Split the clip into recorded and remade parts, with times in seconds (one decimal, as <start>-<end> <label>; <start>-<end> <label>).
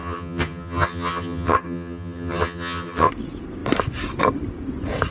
0.0-3.1 remade; 3.1-5.1 recorded